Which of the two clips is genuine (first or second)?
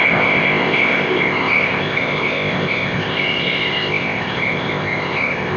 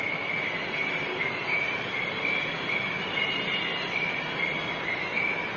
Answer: second